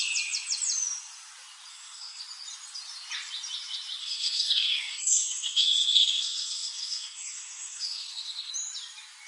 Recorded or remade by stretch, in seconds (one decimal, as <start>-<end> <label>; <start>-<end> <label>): 0.0-1.7 recorded; 1.7-2.2 remade; 2.2-4.0 recorded; 4.0-8.5 remade; 8.5-9.3 recorded